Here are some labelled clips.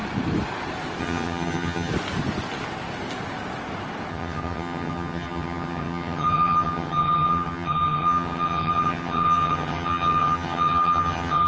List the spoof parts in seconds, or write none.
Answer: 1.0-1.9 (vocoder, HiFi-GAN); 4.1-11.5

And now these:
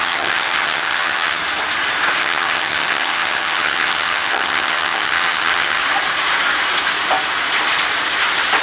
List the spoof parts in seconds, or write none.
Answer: 0.0-1.4 (vocoder, HiFi-GAN); 2.2-5.8

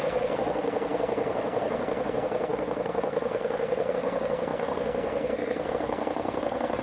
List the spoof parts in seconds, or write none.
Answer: 0.0-6.8 (codec, SNAC)

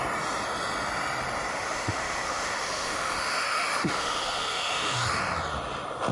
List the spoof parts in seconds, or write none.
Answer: 1.5-5.2 (autoencoder, DAC-VAE)

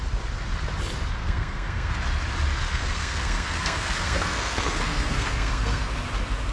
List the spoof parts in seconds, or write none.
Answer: 1.2-1.9 (codec, SNAC); 2.7-5.9

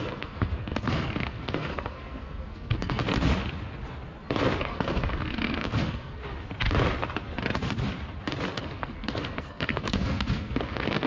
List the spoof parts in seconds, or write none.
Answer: 0.0-3.0 (codec, SNAC); 4.6-6.2; 8.6-11.1

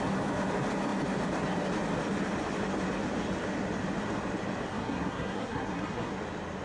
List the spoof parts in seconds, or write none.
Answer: 4.7-6.1 (codec, SNAC)